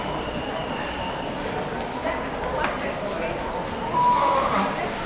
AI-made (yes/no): no